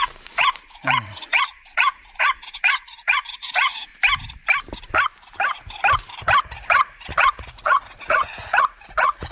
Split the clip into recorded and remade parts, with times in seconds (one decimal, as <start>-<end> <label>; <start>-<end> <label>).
0.0-3.9 remade; 3.9-6.4 recorded; 6.4-9.3 remade